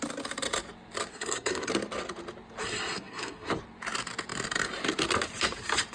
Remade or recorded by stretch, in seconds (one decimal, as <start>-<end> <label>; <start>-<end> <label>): 0.0-1.1 recorded; 1.1-1.7 remade; 1.7-2.6 recorded; 2.6-3.5 remade; 3.5-5.9 recorded